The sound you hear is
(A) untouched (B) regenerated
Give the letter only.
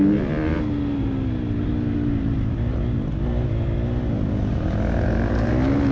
A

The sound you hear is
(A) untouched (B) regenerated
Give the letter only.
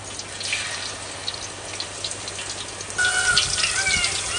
A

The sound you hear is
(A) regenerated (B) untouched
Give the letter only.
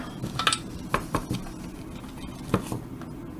B